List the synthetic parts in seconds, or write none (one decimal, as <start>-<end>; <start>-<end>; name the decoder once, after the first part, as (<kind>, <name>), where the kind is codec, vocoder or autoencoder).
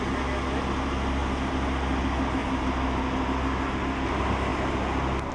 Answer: none